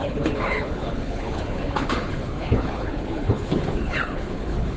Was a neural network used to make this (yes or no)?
yes